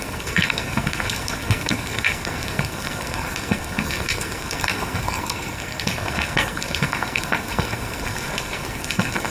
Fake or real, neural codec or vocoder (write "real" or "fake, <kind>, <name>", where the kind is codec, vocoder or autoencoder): fake, codec, SNAC